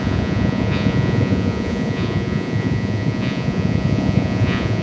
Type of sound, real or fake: fake